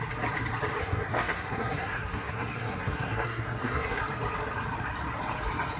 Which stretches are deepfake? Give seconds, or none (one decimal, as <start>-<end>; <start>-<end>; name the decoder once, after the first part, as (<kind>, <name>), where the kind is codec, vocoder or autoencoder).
0.8-4.0 (codec, SNAC)